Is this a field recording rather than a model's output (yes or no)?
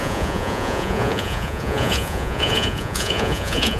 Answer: no